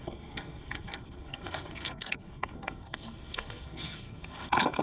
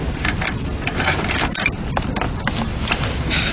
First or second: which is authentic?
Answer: second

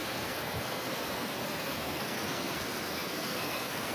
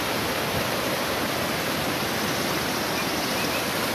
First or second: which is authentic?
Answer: second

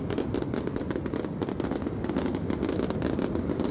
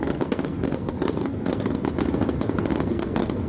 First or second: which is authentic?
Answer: first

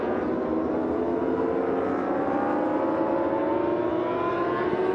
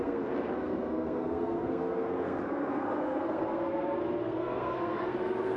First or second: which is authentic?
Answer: first